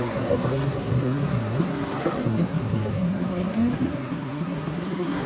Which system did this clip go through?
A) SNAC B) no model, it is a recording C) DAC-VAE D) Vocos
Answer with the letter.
A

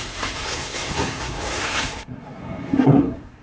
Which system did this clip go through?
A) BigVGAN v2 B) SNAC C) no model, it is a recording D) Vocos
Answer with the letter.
B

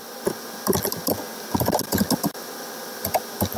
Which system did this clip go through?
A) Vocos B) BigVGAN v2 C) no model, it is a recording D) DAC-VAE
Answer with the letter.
C